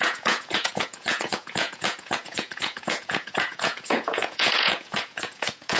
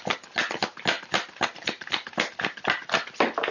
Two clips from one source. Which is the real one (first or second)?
second